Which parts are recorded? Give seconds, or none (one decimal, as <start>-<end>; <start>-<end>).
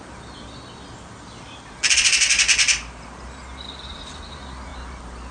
0.0-5.3